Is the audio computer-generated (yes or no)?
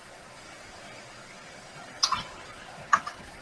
yes